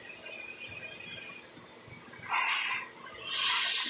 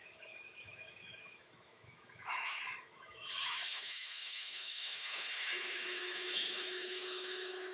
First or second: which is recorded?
first